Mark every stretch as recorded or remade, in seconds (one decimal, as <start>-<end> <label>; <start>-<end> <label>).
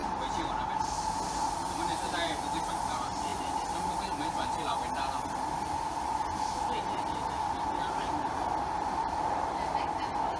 0.0-10.4 recorded